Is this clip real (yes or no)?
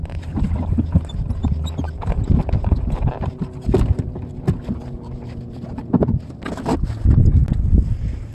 yes